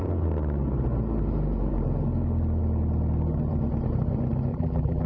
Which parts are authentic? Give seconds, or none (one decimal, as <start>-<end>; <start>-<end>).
0.0-4.5